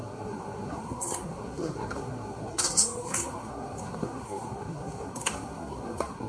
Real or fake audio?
fake